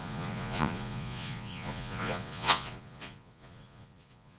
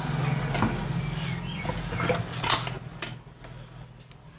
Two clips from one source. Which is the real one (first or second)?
second